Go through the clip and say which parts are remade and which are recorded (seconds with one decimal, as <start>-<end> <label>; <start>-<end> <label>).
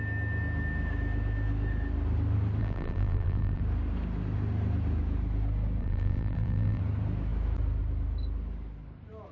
0.0-2.6 recorded; 2.6-3.6 remade; 3.6-5.8 recorded; 5.8-6.8 remade; 6.8-9.3 recorded